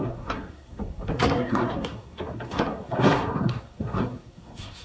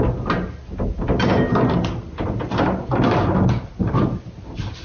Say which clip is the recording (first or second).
second